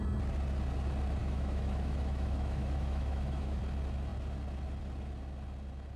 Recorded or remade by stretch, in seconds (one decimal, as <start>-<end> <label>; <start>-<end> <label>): 0.0-1.2 recorded; 1.2-3.6 remade; 3.6-6.0 recorded